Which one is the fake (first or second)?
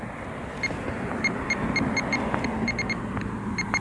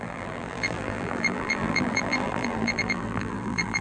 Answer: second